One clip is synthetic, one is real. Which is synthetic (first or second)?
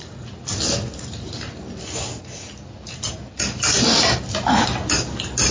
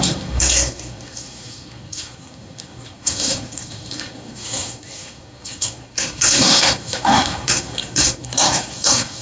second